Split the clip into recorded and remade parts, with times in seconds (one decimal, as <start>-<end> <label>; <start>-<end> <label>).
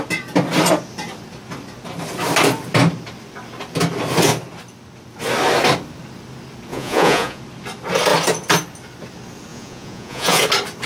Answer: 0.0-6.7 recorded; 6.7-7.4 remade; 7.4-9.5 recorded; 9.5-10.4 remade; 10.4-10.9 recorded